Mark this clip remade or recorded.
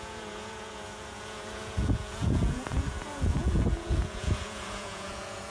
remade